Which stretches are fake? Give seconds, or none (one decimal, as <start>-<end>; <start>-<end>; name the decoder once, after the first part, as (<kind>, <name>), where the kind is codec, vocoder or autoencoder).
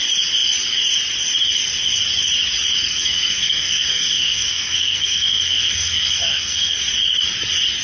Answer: 2.8-6.8 (codec, SNAC)